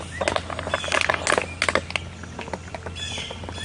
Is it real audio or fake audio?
real